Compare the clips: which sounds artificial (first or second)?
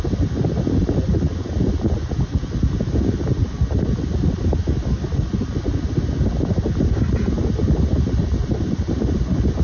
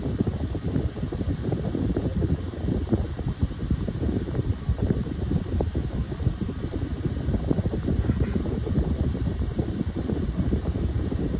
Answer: second